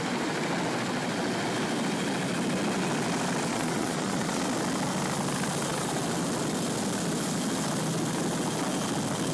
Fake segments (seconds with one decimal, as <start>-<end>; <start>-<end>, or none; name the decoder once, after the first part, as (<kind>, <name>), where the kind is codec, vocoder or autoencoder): 3.5-4.4 (vocoder, Vocos)